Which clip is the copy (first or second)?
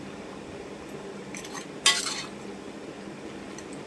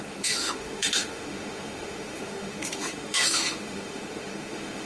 second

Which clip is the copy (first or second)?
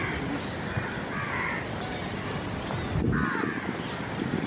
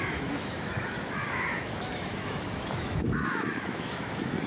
second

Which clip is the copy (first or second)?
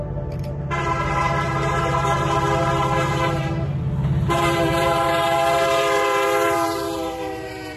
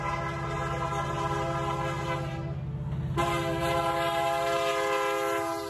first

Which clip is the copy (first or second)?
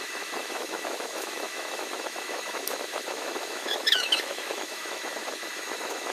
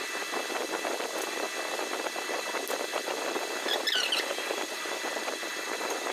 first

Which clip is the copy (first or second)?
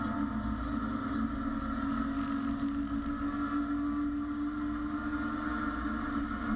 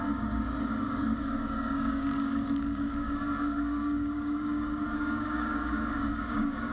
second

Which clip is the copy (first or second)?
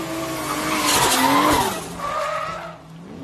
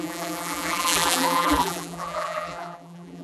second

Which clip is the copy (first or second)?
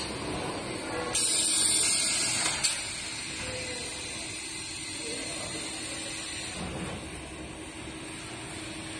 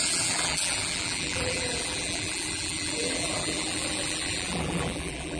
second